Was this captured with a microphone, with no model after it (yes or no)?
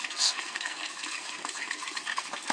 no